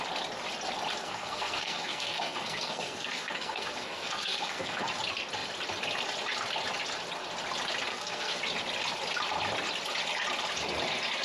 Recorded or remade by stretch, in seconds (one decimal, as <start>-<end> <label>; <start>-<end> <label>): 0.0-1.0 recorded; 1.0-4.9 remade; 4.9-7.9 recorded; 7.9-8.4 remade; 8.4-11.2 recorded